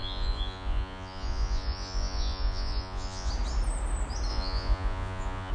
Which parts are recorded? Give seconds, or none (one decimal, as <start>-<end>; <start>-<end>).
3.3-4.3